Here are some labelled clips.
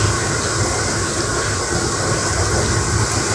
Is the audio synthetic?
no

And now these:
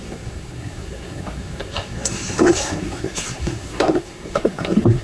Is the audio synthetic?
yes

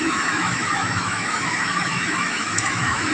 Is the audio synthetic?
yes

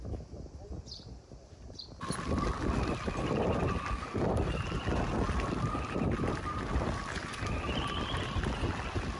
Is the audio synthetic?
no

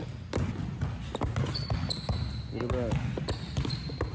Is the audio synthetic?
no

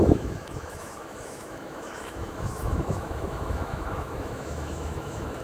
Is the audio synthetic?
yes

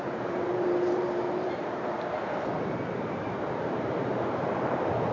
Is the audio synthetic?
yes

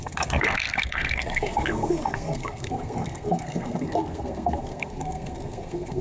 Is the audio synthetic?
yes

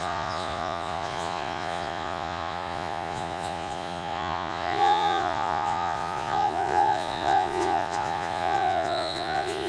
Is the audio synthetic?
yes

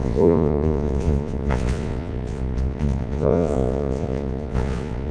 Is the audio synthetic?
yes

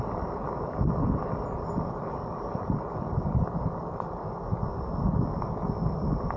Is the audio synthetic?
no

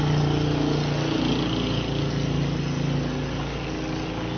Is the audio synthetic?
no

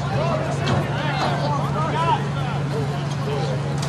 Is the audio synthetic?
no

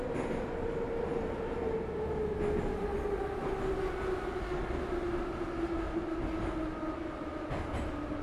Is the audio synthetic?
no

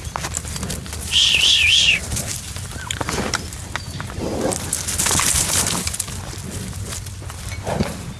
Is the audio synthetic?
no